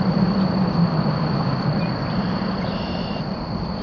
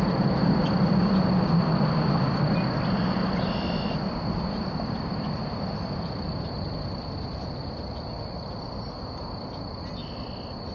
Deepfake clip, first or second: first